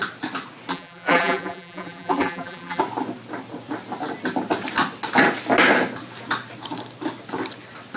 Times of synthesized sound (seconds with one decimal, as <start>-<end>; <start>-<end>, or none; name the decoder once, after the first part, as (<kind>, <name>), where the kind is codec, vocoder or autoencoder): 0.7-2.8 (vocoder, BigVGAN v2)